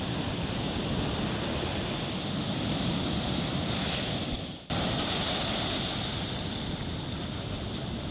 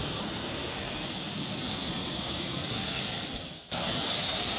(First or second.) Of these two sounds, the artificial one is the second